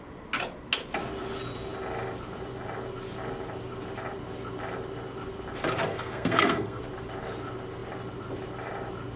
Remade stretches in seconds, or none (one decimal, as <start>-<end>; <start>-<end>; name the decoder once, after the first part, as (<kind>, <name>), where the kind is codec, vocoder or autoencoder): 5.9-6.8 (codec, SNAC)